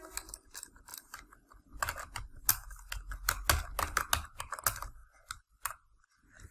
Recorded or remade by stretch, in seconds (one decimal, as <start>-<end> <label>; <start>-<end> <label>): 0.0-6.5 recorded